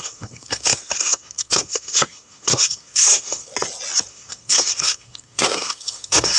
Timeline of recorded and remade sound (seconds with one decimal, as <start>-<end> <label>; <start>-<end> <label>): 0.0-3.5 remade; 3.5-4.1 recorded; 4.1-6.4 remade